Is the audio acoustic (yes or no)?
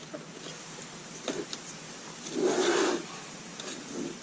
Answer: yes